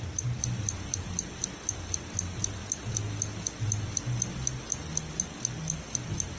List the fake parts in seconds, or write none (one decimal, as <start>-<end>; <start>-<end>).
none